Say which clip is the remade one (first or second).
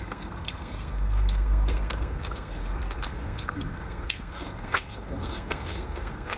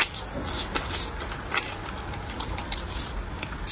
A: first